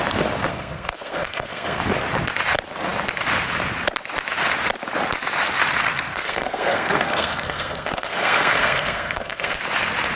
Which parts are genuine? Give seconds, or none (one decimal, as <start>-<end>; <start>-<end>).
0.0-0.5; 1.8-6.1; 9.6-10.2

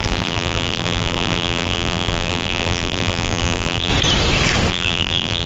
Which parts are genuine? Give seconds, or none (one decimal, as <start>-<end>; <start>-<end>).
3.9-4.7

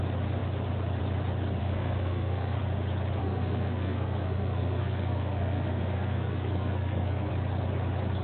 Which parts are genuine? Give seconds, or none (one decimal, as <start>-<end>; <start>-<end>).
0.0-1.6; 2.6-3.2; 7.3-8.2